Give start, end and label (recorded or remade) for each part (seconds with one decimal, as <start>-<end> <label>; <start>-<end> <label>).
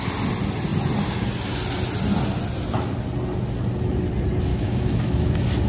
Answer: 0.0-4.5 recorded; 4.5-5.3 remade; 5.3-5.7 recorded